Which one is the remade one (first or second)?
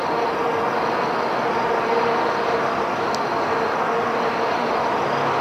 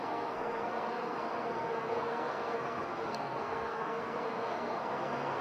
second